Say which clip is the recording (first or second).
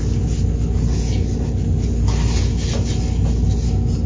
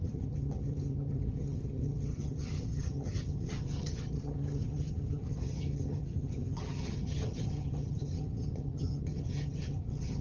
first